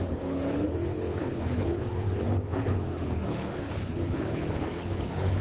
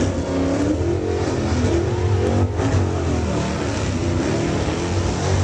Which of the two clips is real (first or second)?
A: second